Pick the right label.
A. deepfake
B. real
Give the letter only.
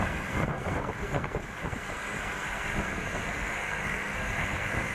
A